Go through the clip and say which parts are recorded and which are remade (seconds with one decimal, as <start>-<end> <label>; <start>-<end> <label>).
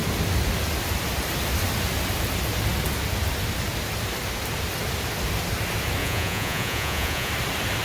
0.0-6.0 recorded; 6.0-7.3 remade; 7.3-7.8 recorded